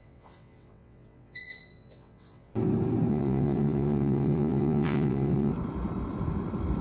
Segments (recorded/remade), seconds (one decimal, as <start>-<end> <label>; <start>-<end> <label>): 0.0-2.5 remade; 2.5-3.1 recorded; 3.1-5.5 remade; 5.5-6.8 recorded